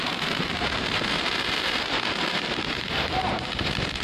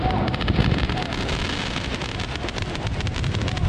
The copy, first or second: first